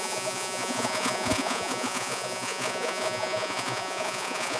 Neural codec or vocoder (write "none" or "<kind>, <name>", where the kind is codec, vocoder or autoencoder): vocoder, Vocos